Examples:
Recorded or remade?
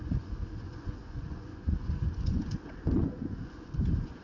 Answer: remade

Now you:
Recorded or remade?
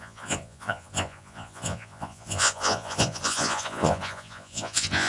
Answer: remade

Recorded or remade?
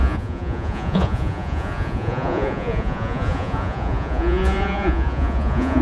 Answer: remade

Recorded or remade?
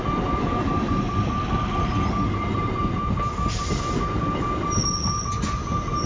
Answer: recorded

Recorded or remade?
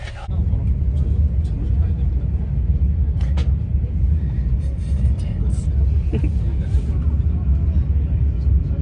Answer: recorded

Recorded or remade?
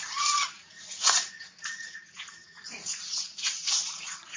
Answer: remade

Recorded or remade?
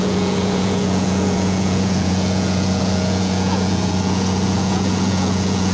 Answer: remade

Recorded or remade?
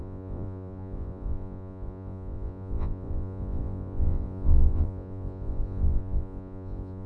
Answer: remade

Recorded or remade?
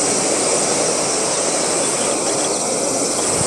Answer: recorded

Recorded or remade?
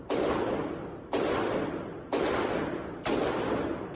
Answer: recorded